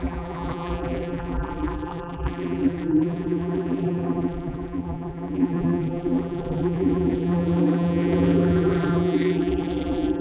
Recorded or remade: remade